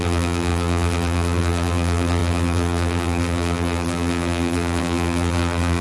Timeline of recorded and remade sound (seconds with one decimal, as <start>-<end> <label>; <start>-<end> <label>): 0.0-5.8 remade